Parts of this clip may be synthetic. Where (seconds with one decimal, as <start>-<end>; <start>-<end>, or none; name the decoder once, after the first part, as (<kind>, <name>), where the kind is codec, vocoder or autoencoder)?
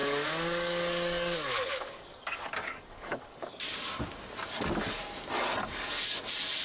0.0-4.0 (codec, DAC)